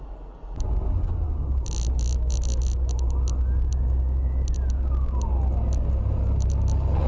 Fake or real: real